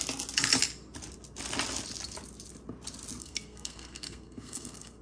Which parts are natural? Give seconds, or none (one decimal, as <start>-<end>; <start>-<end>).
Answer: 0.0-3.2